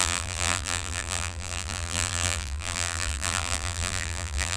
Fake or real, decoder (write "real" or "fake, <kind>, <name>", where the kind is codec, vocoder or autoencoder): fake, vocoder, BigVGAN v2